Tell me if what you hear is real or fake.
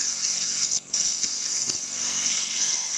fake